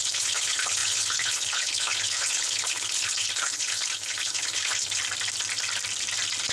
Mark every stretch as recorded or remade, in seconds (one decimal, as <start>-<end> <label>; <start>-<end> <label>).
0.0-5.0 remade; 5.0-6.5 recorded